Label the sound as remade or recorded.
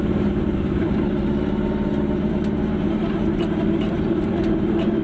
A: remade